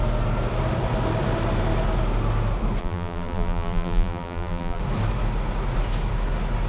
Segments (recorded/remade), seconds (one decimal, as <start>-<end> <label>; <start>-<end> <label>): 0.0-2.8 recorded; 2.8-4.8 remade; 4.8-6.7 recorded